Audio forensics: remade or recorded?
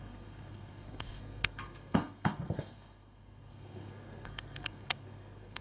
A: remade